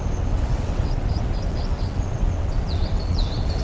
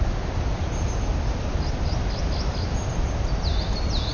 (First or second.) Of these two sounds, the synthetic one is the first